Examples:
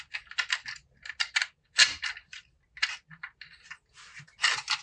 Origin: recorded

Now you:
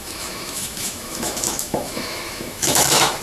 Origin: remade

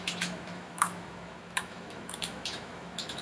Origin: remade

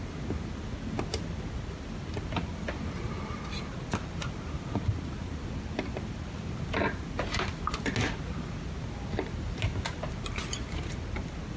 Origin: recorded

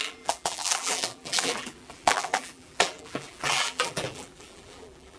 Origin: remade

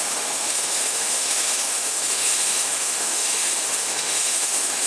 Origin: remade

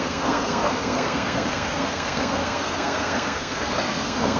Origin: remade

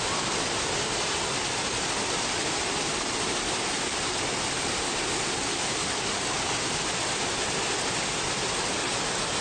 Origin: recorded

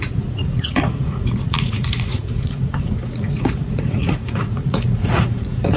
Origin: remade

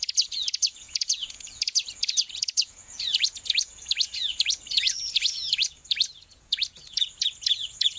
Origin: remade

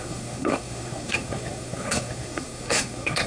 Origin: remade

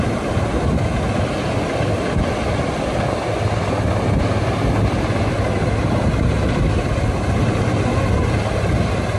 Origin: recorded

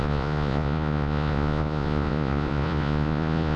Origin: remade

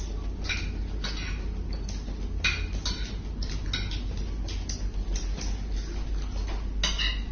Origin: recorded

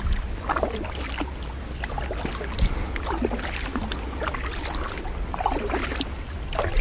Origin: recorded